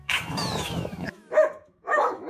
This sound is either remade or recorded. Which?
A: remade